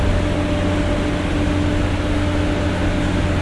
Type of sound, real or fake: real